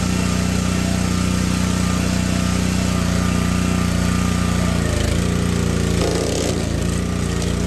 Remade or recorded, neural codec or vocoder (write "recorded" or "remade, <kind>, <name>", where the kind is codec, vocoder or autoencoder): recorded